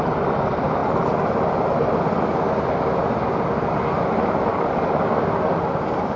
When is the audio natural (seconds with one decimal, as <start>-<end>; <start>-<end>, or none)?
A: 0.0-4.5; 5.2-6.2